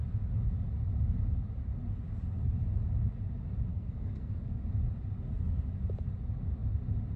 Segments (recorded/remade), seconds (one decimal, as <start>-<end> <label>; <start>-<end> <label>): 0.0-3.7 recorded; 3.7-4.6 remade; 4.6-7.2 recorded